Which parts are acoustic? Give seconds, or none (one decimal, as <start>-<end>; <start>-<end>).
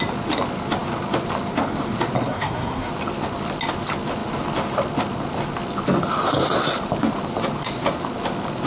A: 0.0-2.3; 2.9-8.7